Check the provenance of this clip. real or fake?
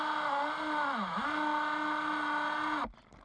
real